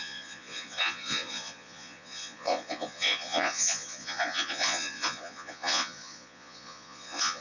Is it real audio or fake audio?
fake